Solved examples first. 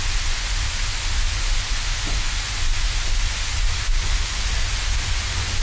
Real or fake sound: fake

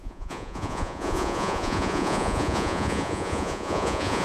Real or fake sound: fake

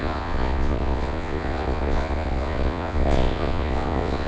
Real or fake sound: fake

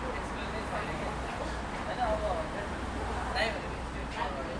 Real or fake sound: real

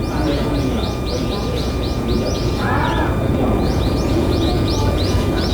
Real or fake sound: fake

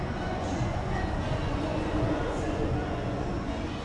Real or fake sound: fake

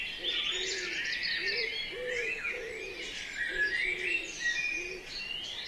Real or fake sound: real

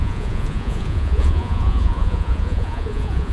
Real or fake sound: fake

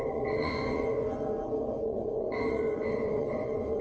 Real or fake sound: fake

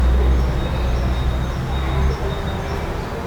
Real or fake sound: real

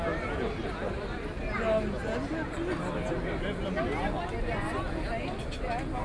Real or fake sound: real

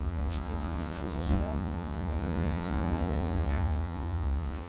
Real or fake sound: fake